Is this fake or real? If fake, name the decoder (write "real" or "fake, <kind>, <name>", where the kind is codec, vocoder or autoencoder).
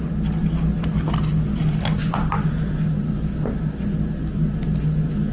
real